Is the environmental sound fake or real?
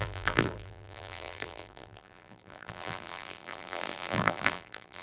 fake